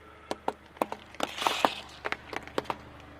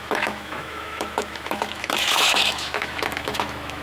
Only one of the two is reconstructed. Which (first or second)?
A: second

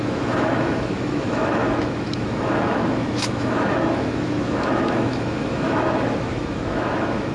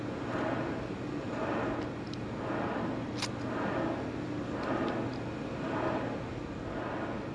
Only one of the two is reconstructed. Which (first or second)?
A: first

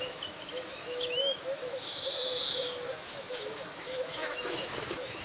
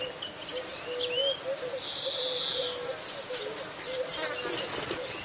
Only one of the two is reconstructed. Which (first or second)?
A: first